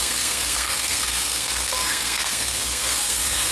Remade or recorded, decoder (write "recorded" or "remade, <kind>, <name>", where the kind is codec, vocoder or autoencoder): remade, codec, SNAC